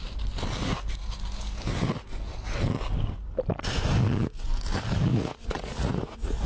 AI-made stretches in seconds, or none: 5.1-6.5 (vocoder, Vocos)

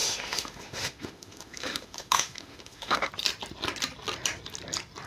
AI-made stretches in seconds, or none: 0.0-3.1 (autoencoder, DAC-VAE)

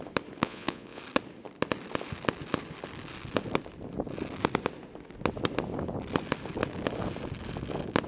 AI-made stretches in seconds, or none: 0.4-1.0 (vocoder, Vocos)

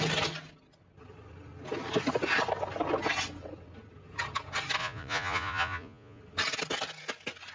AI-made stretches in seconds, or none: 4.8-6.2 (vocoder, Vocos)